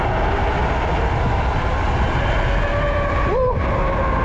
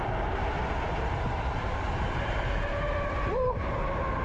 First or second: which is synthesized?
second